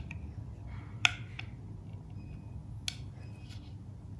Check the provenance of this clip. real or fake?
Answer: real